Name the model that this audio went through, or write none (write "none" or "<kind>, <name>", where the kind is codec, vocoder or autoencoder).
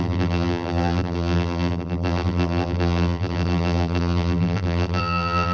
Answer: vocoder, BigVGAN v2